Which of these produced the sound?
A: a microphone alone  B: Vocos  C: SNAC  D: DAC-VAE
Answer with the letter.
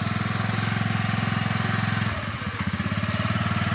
A